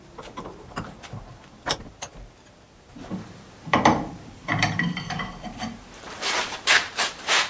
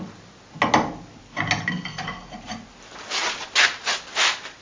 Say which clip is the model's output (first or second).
first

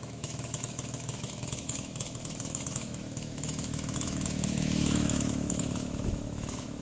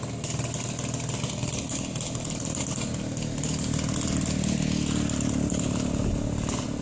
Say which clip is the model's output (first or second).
first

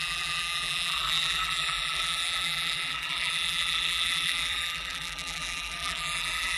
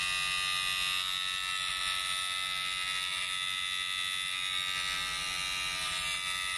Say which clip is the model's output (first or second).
first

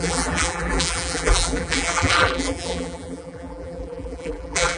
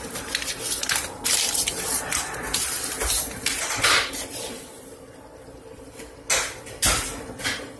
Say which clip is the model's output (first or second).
first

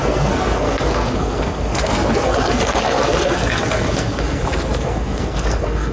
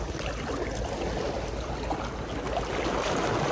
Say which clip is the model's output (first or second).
first